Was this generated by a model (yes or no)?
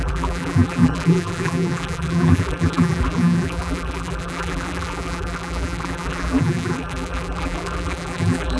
yes